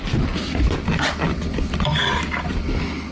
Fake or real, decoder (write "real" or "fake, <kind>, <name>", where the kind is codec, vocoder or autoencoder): real